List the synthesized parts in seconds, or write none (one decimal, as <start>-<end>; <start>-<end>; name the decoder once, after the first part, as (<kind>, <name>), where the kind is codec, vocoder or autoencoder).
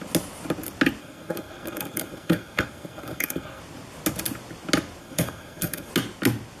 1.0-3.6 (codec, SNAC); 5.0-5.9